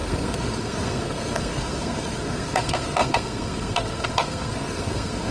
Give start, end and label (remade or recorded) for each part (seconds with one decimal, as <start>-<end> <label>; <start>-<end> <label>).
0.0-5.3 remade